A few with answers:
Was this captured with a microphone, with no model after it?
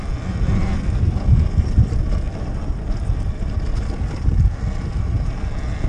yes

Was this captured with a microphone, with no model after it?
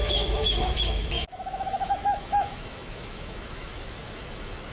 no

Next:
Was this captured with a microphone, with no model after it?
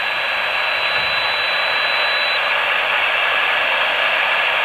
yes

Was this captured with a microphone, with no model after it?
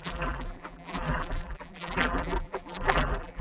no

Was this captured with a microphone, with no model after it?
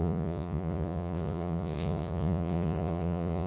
no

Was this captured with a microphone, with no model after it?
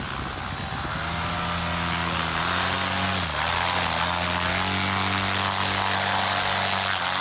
yes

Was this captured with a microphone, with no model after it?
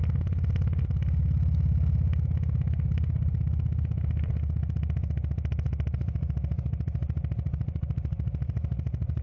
yes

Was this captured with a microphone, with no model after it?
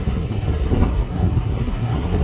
no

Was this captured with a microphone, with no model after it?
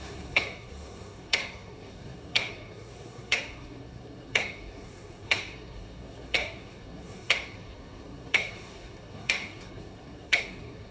no